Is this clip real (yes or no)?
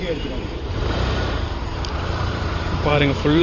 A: no